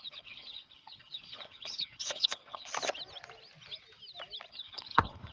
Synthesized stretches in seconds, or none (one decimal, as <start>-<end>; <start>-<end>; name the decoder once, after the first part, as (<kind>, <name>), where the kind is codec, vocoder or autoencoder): 0.0-2.7 (codec, HILCodec); 4.5-5.3